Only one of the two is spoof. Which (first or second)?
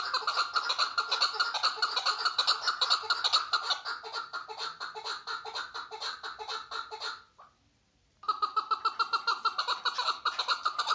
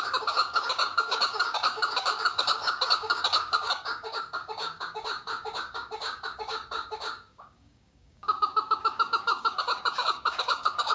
second